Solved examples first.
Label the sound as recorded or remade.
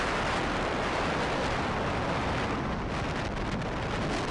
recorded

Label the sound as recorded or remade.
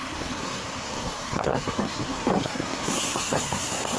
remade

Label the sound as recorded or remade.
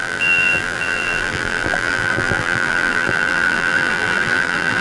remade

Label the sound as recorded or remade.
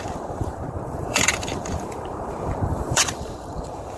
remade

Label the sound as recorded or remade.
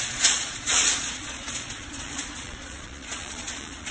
remade